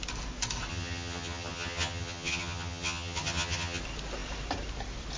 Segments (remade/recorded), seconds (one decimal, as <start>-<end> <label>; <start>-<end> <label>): 0.0-0.7 recorded; 0.7-3.8 remade; 3.8-5.2 recorded